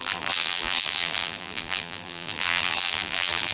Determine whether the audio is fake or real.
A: fake